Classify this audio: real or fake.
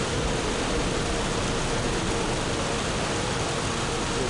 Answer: real